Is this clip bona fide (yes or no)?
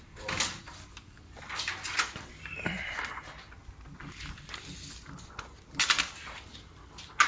yes